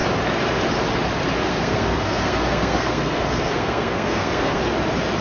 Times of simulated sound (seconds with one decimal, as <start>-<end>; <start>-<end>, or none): 1.5-4.6